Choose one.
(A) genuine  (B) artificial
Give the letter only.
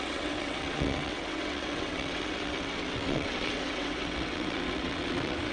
B